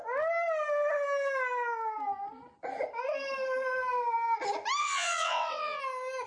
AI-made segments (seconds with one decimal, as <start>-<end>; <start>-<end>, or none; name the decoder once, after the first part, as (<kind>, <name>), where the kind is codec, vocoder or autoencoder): 4.8-5.8 (vocoder, WaveNeXt)